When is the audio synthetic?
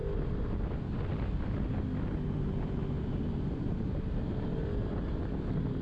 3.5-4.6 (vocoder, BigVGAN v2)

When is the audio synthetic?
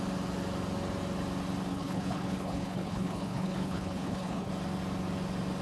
1.7-4.5 (codec, HILCodec)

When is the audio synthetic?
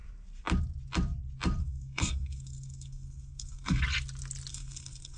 1.6-3.8 (codec, SNAC); 4.5-5.2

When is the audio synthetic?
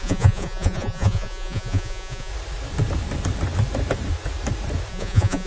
0.0-2.3 (vocoder, Vocos); 4.9-5.5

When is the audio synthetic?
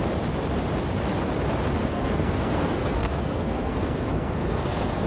1.8-5.1 (codec, SNAC)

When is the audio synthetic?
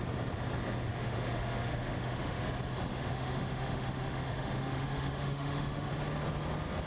0.9-2.4 (autoencoder, DAC-VAE); 2.9-5.9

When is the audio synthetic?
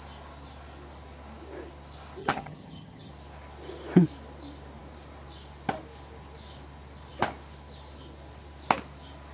2.2-3.1 (vocoder, HiFi-GAN)